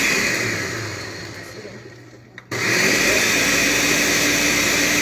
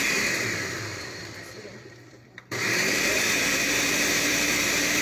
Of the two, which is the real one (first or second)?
first